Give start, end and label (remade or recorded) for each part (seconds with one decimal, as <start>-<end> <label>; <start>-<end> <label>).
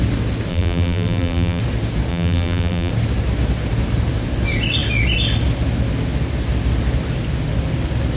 0.0-0.5 recorded; 0.5-1.6 remade; 1.6-2.1 recorded; 2.1-2.9 remade; 2.9-8.2 recorded